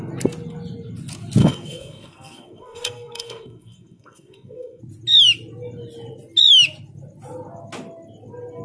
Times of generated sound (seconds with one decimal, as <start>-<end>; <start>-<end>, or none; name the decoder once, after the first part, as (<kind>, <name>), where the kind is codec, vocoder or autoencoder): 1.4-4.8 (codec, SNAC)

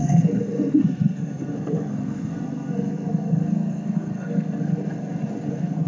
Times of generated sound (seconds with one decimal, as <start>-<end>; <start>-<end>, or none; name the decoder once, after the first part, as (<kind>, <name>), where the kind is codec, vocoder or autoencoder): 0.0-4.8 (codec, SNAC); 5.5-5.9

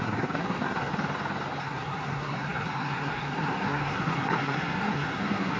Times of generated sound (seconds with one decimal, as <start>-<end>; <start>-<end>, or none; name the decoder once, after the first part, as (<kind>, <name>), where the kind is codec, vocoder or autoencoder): 0.0-0.9 (codec, SNAC); 1.6-5.6

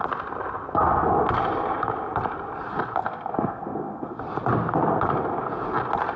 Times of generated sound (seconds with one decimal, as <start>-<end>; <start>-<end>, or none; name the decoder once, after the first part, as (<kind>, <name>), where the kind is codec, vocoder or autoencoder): 3.0-4.2 (codec, SNAC)